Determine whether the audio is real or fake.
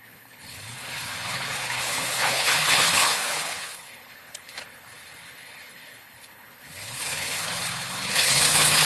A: fake